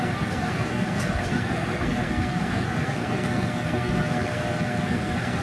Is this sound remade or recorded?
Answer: remade